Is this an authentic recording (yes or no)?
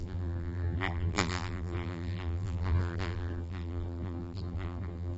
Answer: no